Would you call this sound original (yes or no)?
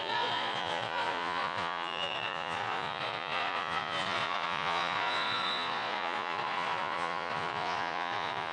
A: no